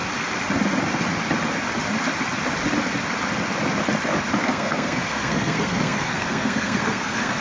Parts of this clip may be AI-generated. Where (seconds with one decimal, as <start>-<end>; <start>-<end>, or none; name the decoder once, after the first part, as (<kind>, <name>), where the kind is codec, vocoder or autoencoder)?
4.4-7.4 (codec, SNAC)